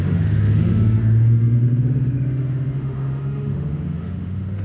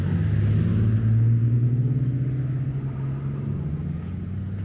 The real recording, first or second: second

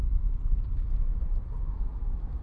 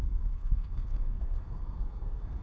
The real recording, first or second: first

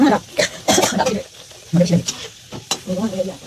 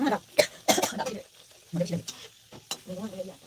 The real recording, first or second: second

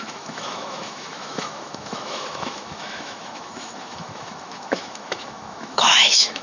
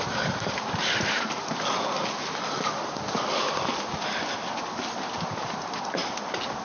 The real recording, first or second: second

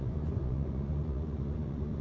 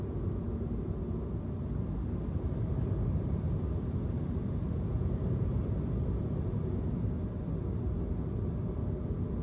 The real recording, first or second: second